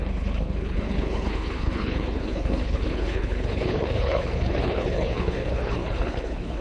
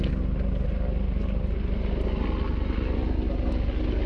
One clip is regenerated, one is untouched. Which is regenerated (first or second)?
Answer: first